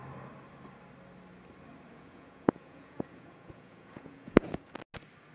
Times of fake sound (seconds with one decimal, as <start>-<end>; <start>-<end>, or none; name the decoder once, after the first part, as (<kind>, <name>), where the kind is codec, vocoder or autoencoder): 1.9-4.7 (vocoder, Vocos)